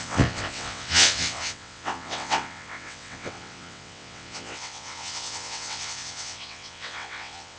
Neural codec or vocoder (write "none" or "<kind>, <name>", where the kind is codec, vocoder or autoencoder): vocoder, WaveNeXt